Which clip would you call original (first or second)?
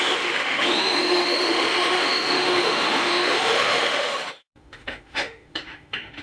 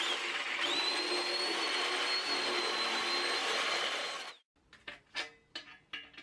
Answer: second